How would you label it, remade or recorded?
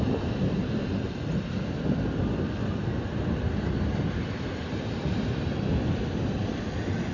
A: recorded